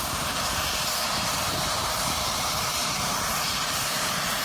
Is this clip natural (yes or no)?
no